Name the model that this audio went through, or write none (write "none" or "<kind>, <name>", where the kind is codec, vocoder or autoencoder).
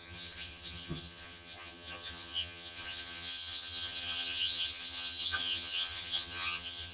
vocoder, HiFi-GAN